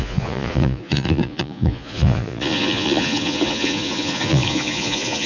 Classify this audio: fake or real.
fake